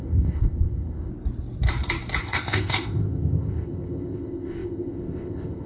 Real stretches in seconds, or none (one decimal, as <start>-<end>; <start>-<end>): 1.1-2.2